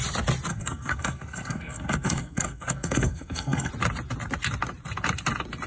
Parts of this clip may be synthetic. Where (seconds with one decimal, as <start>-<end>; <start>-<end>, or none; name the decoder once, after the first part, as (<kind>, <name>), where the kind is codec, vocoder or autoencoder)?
0.5-3.7 (codec, SNAC)